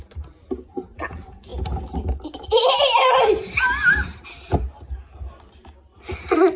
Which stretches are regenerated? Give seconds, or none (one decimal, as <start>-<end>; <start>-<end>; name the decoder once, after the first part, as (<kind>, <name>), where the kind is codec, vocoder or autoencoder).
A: none